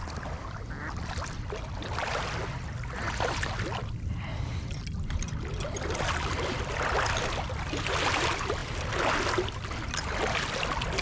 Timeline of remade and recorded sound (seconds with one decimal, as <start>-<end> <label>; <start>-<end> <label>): 0.0-11.0 recorded